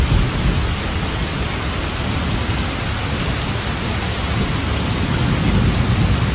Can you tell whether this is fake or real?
real